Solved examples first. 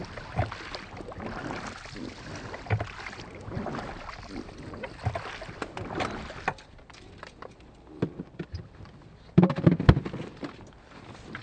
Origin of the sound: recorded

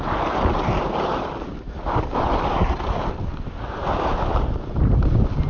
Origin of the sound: recorded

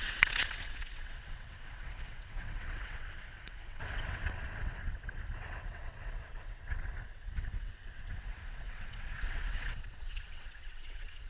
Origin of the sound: remade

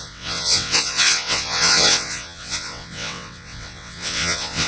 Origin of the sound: remade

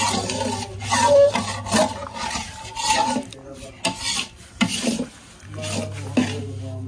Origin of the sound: recorded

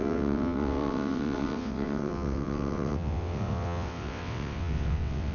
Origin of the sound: remade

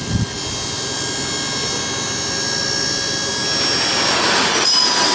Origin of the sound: recorded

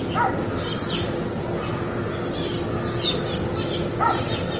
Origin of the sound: recorded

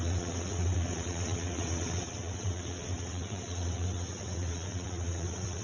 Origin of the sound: remade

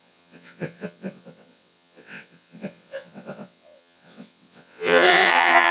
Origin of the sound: remade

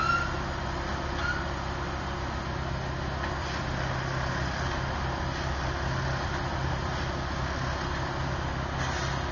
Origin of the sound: recorded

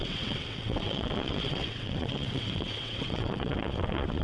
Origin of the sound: remade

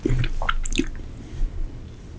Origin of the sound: recorded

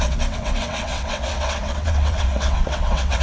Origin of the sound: remade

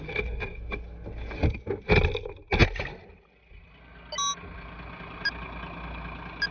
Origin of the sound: recorded